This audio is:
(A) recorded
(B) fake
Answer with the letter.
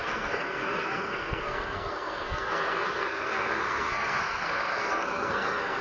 B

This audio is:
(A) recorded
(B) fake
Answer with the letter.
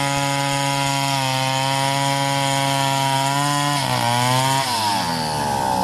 A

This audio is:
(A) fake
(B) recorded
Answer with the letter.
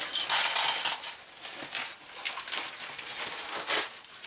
B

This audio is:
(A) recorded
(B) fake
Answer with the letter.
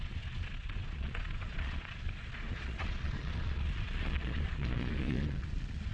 B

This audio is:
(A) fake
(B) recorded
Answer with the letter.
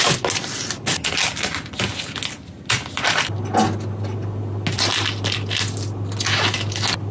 B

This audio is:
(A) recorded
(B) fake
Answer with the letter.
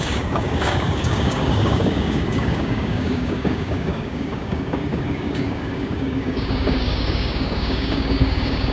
B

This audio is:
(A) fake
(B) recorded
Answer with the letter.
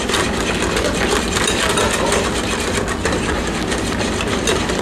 B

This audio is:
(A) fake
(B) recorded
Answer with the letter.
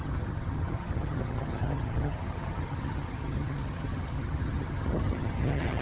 A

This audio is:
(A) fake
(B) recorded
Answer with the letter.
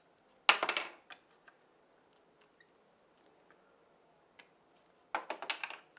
B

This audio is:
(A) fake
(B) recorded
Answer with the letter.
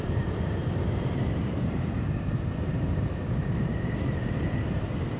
A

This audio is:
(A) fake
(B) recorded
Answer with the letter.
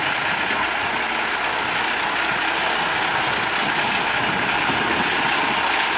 B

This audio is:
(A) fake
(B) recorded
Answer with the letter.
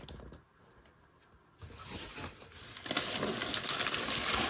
B